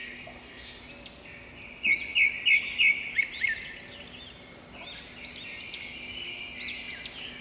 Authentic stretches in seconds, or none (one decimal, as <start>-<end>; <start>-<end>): 0.8-7.4